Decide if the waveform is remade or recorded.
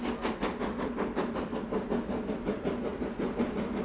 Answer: recorded